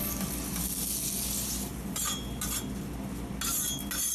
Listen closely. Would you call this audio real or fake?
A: real